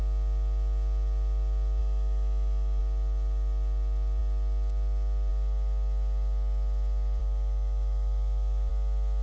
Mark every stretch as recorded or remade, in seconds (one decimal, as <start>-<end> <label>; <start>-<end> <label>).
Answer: 0.0-1.8 recorded; 1.8-2.8 remade; 2.8-7.2 recorded; 7.2-8.7 remade; 8.7-9.2 recorded